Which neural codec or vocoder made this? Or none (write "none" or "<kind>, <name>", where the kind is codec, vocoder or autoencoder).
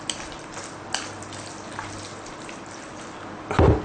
none